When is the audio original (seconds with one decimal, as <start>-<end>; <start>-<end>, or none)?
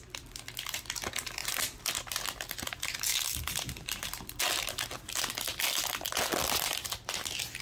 0.0-1.4; 1.9-3.1; 4.4-7.6